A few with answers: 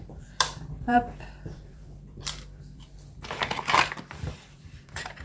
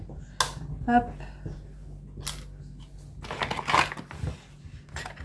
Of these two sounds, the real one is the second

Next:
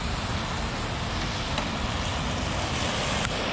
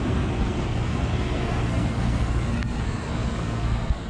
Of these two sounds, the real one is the first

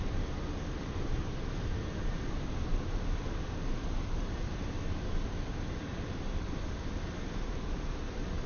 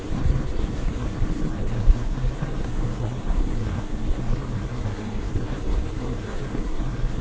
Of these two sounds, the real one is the first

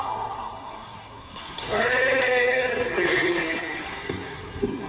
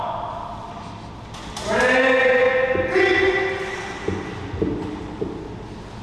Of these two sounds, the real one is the second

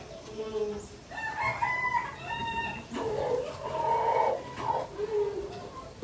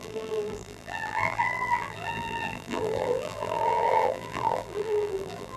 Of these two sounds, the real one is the first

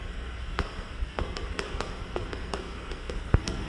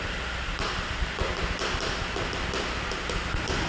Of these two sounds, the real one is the second